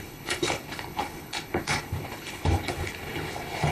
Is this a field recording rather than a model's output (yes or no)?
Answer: no